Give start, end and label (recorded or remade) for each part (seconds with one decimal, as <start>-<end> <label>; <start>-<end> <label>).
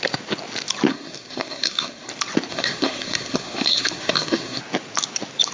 0.0-0.9 recorded; 0.9-2.1 remade; 2.1-2.5 recorded; 2.5-4.6 remade; 4.6-5.5 recorded